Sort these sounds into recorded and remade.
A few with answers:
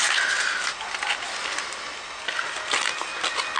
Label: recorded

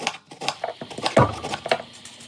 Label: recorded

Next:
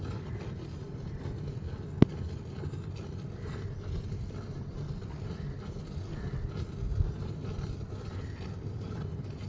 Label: recorded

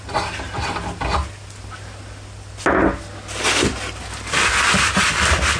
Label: recorded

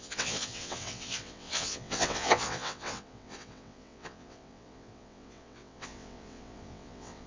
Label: remade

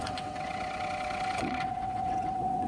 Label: remade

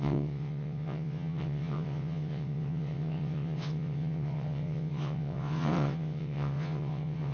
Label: remade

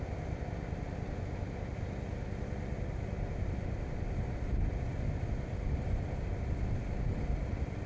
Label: recorded